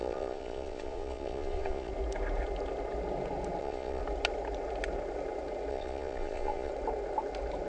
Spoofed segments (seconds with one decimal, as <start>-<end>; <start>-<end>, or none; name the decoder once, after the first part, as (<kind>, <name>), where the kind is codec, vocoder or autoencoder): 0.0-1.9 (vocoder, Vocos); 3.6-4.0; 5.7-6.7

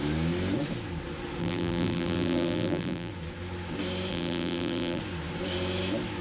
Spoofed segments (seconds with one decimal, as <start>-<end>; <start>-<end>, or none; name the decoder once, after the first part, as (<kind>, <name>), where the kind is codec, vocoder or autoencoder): 1.4-3.1 (vocoder, BigVGAN v2); 4.1-5.0

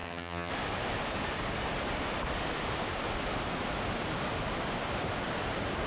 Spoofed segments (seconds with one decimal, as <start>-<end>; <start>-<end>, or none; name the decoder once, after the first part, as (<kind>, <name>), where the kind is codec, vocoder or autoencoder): 0.0-0.5 (vocoder, HiFi-GAN)

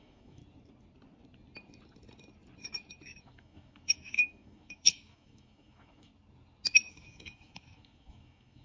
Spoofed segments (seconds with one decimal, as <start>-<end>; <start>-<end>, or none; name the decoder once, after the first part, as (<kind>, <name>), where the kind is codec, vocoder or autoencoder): 0.0-0.4 (autoencoder, DAC-VAE); 3.2-6.1; 6.9-8.6

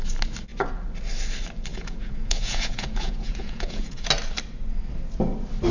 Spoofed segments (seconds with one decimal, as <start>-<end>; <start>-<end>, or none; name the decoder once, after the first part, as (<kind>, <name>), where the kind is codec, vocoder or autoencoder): 1.7-4.1 (vocoder, Vocos)